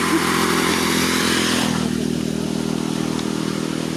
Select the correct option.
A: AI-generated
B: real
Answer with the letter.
B